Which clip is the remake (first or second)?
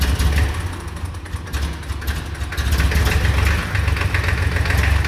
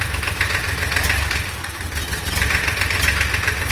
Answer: second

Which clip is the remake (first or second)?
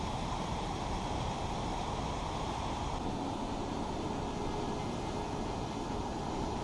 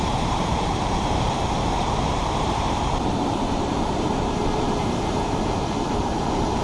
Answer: second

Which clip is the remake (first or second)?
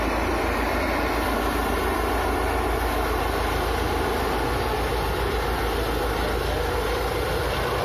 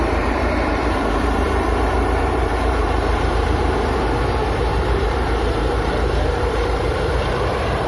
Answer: second